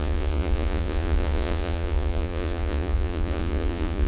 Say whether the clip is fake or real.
fake